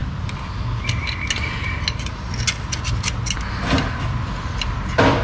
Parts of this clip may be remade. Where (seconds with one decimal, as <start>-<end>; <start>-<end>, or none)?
none